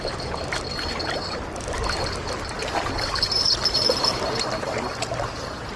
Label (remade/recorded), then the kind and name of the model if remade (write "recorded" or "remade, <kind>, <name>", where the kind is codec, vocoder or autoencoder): recorded